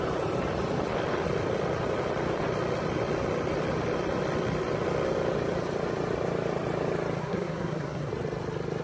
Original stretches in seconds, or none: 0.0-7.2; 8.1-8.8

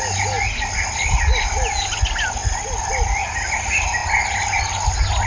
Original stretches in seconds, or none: 0.0-5.3

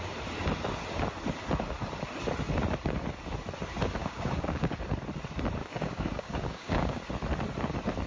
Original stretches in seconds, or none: 0.0-4.0; 4.7-5.6; 7.0-8.1

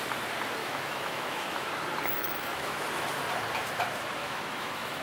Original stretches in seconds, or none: 0.0-0.6; 1.7-2.2; 2.8-4.2

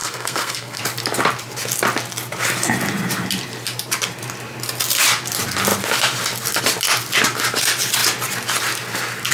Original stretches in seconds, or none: 0.8-9.3

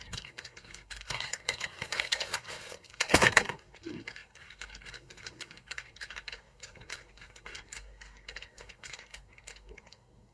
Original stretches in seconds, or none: none

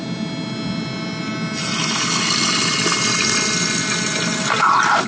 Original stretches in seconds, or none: 0.0-5.1

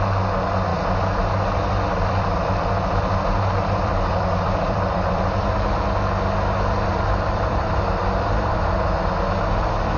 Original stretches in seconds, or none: 0.0-0.7; 5.8-6.9; 8.6-10.0